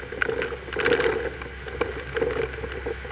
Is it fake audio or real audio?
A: real